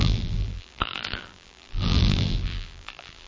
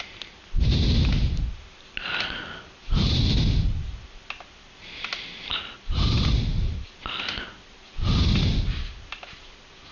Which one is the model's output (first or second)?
first